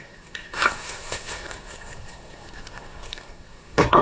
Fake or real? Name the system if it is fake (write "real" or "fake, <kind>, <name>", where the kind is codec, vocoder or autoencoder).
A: fake, codec, SNAC